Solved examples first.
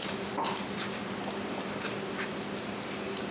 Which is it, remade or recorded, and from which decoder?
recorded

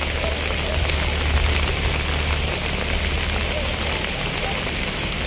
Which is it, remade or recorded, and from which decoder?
recorded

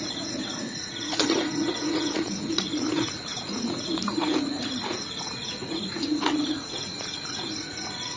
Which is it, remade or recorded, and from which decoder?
remade, vocoder, Vocos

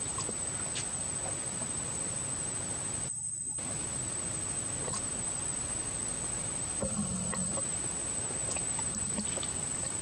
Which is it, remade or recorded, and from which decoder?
recorded